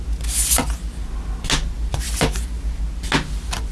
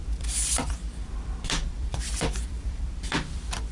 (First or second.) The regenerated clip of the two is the second